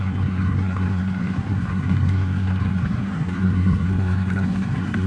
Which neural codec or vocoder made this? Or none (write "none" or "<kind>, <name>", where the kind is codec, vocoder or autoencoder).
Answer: codec, SNAC